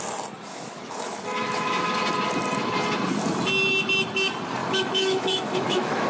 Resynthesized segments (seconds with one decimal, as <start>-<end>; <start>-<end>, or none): 0.5-1.9; 4.6-6.1